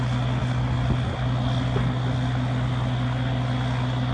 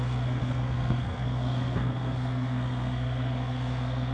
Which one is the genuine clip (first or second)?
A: first